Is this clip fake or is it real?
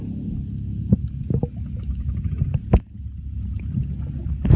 real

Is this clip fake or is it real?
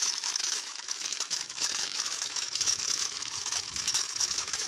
fake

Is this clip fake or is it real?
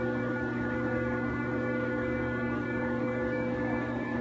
fake